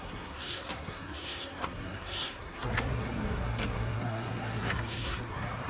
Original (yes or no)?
no